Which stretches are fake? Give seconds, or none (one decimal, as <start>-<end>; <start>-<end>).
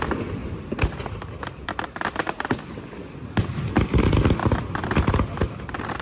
none